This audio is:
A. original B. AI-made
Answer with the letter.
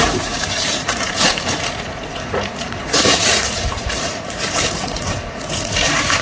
B